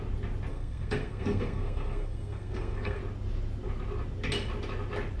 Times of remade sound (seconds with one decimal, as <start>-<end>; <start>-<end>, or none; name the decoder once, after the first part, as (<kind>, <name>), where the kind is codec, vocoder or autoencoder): 0.5-3.0 (codec, SNAC)